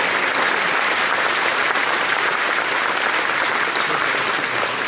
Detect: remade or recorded recorded